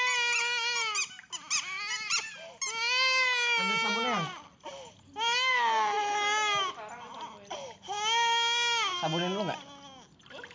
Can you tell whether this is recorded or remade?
recorded